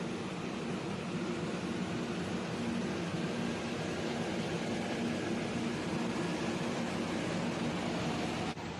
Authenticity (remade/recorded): recorded